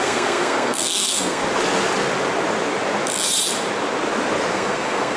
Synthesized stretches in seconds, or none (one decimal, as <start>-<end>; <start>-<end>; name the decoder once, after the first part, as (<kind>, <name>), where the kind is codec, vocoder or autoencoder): 0.0-1.4 (codec, SNAC); 4.5-5.2